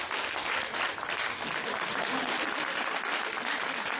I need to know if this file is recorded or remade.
recorded